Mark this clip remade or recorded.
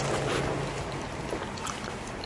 recorded